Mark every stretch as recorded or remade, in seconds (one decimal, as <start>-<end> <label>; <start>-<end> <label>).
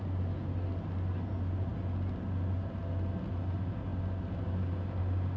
0.0-5.4 recorded